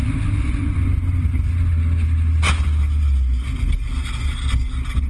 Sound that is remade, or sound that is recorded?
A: recorded